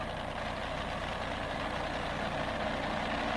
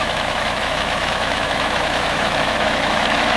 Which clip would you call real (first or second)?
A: first